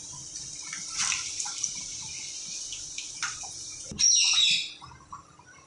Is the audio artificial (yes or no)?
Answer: yes